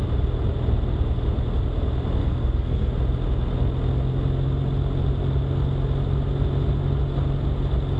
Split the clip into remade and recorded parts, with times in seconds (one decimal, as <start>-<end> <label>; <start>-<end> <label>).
0.0-2.2 recorded; 2.2-2.9 remade; 2.9-8.0 recorded